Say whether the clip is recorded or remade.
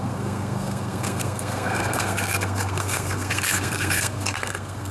remade